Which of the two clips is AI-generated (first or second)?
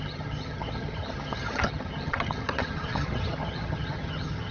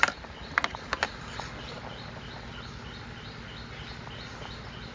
first